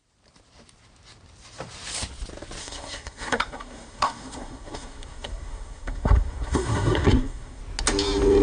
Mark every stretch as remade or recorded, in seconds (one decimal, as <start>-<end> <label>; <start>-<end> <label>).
0.0-2.6 recorded; 2.6-7.6 remade; 7.6-8.4 recorded